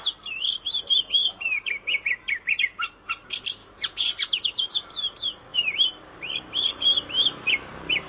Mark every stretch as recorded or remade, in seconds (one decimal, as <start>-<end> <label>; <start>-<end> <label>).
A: 0.0-1.2 recorded; 1.2-3.1 remade; 3.1-3.6 recorded; 3.6-4.1 remade; 4.1-5.5 recorded; 5.5-8.1 remade